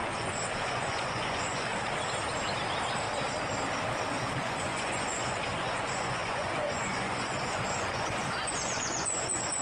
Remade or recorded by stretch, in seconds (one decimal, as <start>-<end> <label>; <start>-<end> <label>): 0.0-1.7 remade; 1.7-4.4 recorded; 4.4-9.6 remade